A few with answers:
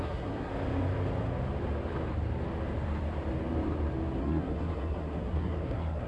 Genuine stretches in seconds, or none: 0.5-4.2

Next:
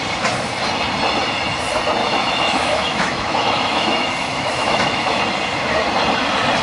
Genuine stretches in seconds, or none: 0.0-2.0; 5.2-6.6

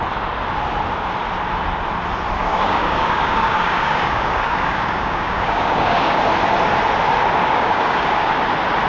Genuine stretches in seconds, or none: 0.0-2.4; 6.2-7.4; 8.3-8.9

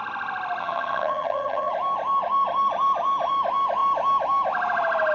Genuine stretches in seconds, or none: 0.0-0.6; 1.7-5.1

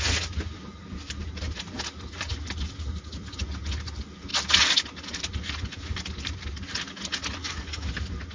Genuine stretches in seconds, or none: 0.0-7.4; 7.9-8.3

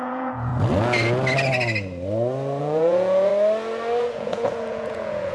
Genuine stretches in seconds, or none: 0.5-2.6; 3.3-4.0

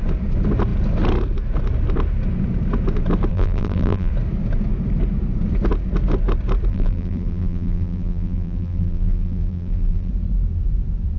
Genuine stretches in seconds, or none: 0.0-3.3; 4.1-6.7; 10.1-11.2

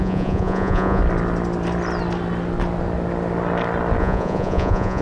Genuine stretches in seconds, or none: 1.0-4.0